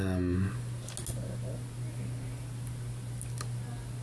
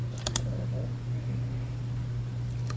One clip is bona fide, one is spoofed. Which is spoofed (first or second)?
second